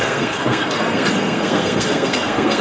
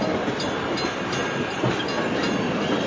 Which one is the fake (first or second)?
first